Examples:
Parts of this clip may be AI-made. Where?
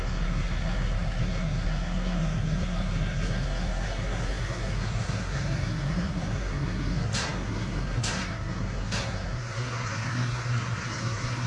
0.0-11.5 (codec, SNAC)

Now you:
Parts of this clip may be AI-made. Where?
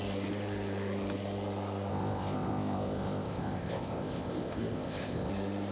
1.9-5.3 (codec, ZipCodec)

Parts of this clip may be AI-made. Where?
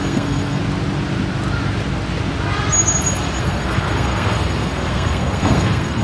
0.0-0.6 (codec, SNAC); 3.4-6.0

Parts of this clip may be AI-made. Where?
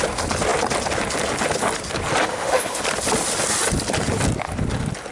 2.3-2.8 (autoencoder, DAC-VAE)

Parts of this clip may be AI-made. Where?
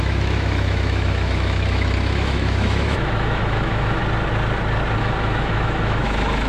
0.0-4.0 (autoencoder, DAC-VAE); 5.0-6.5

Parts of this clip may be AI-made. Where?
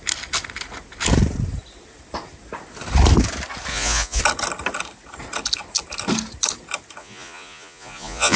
3.7-4.2 (vocoder, Vocos); 7.0-8.4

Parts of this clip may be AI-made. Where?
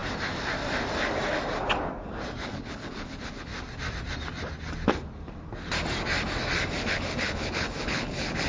2.4-3.5 (codec, HILCodec); 6.9-8.5